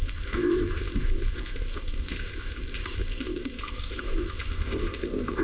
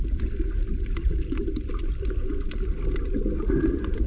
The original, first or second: second